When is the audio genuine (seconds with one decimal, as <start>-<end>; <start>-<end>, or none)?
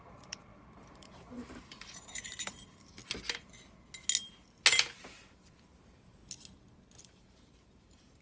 3.0-4.7; 6.2-7.0